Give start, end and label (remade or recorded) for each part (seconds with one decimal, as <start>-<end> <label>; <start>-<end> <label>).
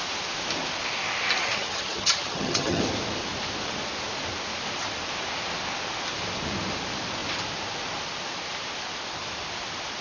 0.0-1.4 recorded; 1.4-2.8 remade; 2.8-10.0 recorded